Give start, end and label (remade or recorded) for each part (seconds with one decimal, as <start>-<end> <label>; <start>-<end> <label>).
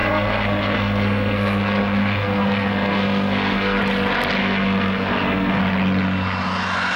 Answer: 0.0-3.8 remade; 3.8-4.4 recorded; 4.4-5.6 remade; 5.6-7.0 recorded